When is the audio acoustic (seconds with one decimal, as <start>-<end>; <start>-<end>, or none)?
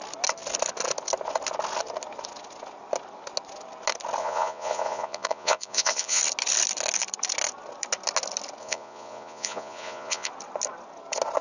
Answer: 0.0-4.2; 6.2-8.6; 10.3-11.4